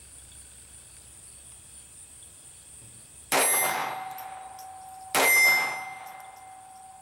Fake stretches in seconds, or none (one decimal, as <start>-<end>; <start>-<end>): none